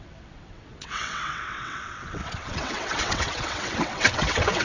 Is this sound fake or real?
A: fake